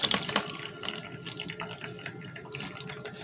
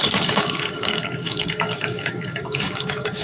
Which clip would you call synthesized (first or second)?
second